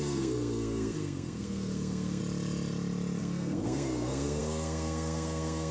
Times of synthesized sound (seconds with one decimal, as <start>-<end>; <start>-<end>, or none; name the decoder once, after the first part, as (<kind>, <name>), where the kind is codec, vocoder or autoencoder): 0.0-2.2 (codec, SNAC); 3.2-5.7